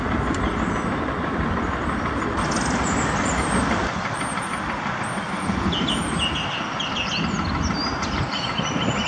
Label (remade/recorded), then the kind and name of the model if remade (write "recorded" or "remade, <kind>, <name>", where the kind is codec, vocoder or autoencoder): recorded